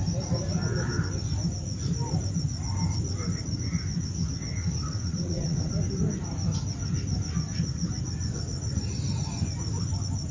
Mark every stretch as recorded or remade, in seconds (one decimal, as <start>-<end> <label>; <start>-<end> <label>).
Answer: 0.0-4.6 recorded; 4.6-5.7 remade; 5.7-10.3 recorded

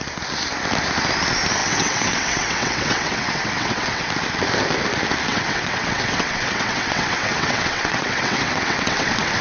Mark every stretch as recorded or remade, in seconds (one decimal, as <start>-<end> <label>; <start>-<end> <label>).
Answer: 0.0-1.6 recorded; 1.6-4.1 remade; 4.1-5.3 recorded; 5.3-9.4 remade

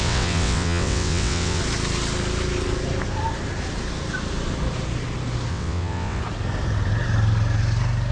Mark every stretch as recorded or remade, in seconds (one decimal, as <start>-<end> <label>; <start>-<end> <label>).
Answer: 0.0-1.6 remade; 1.6-5.5 recorded; 5.5-6.2 remade; 6.2-8.1 recorded

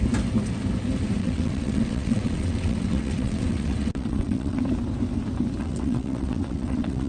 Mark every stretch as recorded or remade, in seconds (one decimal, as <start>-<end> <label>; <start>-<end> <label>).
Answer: 0.0-1.2 recorded; 1.2-4.6 remade; 4.6-5.6 recorded; 5.6-7.1 remade

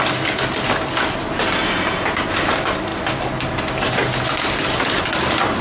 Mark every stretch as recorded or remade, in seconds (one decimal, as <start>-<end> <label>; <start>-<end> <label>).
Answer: 0.0-5.6 recorded

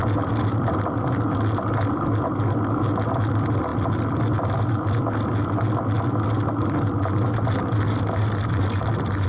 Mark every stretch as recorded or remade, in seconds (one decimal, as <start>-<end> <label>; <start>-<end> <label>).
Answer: 0.0-9.3 recorded

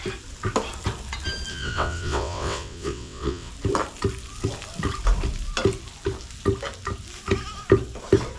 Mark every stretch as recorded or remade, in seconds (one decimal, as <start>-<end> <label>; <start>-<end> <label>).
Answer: 0.0-1.5 recorded; 1.5-3.5 remade; 3.5-8.4 recorded